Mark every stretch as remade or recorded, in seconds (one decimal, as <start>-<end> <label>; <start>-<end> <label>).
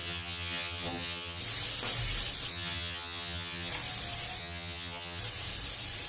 0.0-1.4 remade; 1.4-2.5 recorded; 2.5-3.7 remade; 3.7-4.4 recorded; 4.4-5.2 remade; 5.2-6.1 recorded